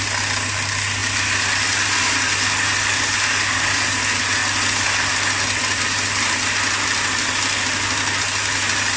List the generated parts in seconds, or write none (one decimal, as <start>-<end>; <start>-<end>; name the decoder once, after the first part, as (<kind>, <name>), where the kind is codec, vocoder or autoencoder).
none